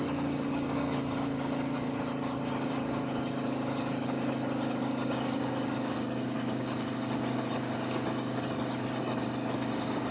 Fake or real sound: fake